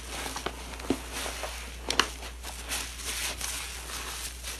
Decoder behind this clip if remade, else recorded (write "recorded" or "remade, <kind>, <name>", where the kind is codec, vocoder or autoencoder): recorded